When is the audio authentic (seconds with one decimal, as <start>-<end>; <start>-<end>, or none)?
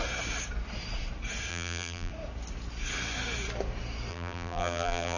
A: 0.0-1.5; 2.1-4.1